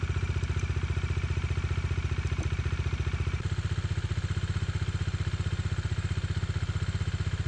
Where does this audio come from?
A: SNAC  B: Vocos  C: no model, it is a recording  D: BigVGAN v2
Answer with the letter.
C